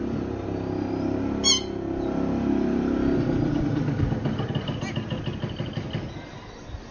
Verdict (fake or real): real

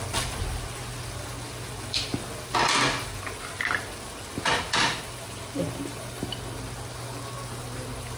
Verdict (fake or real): real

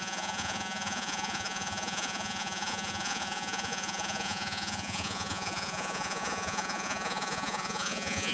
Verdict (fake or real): fake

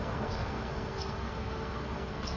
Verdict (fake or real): fake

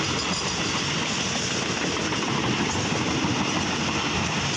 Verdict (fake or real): real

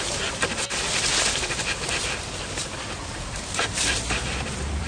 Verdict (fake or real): fake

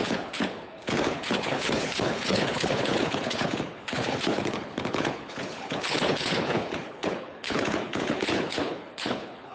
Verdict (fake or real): fake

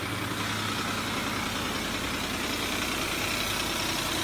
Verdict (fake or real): real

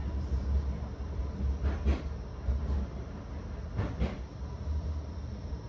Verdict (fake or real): real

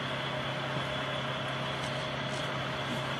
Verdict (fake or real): real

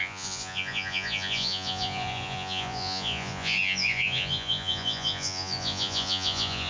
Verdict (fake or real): fake